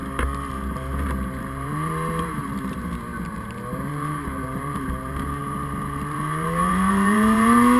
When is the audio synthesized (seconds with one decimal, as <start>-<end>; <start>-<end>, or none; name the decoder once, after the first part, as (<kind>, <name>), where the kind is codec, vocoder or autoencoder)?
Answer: 0.5-7.8 (vocoder, BigVGAN v2)